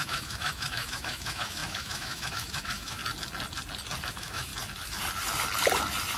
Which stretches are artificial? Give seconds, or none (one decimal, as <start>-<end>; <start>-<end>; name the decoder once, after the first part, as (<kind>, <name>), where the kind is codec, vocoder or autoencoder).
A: 0.0-3.0 (autoencoder, DAC-VAE); 4.1-4.5